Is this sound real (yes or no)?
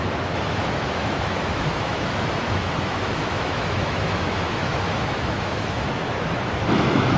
no